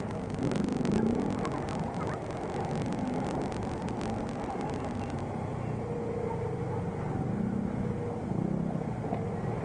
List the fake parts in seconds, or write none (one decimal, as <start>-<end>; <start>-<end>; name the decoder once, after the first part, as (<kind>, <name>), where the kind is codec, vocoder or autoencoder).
none